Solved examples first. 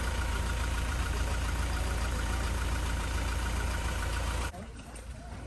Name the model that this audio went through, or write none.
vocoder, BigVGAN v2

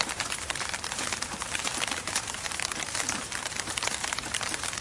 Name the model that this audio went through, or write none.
vocoder, BigVGAN v2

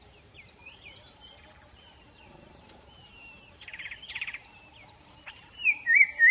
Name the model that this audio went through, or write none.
vocoder, BigVGAN v2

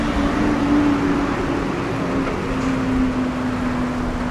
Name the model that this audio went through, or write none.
none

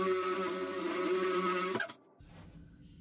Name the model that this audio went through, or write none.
none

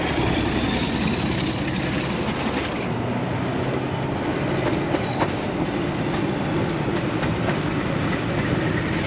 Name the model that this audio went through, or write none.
none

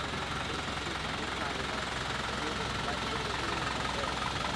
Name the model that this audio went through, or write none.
none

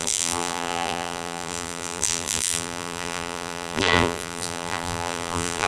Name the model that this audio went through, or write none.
vocoder, BigVGAN v2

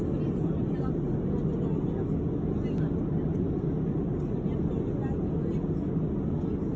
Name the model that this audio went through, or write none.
none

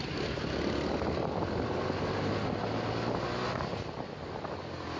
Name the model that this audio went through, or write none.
none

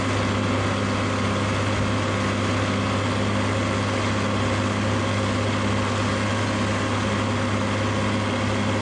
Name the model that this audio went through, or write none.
none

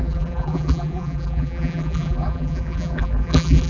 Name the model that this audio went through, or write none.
vocoder, BigVGAN v2